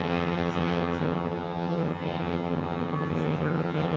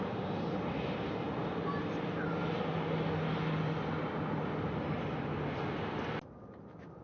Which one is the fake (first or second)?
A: first